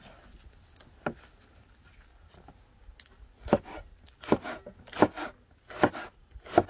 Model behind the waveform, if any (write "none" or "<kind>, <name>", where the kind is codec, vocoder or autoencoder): none